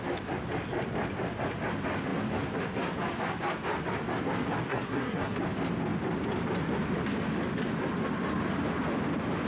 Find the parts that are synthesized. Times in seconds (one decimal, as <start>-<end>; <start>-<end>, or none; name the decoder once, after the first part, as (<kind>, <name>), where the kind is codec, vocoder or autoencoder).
4.7-5.4 (codec, SNAC)